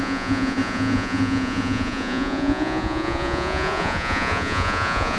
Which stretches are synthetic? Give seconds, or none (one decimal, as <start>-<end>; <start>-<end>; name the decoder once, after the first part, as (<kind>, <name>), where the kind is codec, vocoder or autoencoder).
0.0-5.2 (vocoder, Vocos)